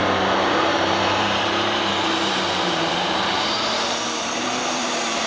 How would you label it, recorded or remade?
remade